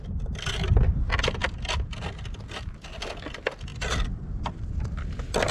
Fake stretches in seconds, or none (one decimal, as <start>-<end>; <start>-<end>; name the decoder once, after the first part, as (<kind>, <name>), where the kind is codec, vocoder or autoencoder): none